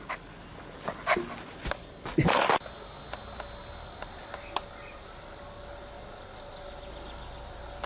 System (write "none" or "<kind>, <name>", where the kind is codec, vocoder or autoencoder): none